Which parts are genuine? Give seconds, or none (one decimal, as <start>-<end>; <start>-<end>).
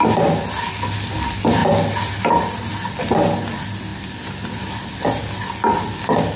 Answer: 0.0-6.4